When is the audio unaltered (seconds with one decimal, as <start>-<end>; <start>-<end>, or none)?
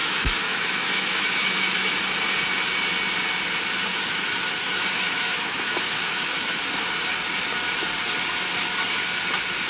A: 1.9-3.9; 6.6-9.7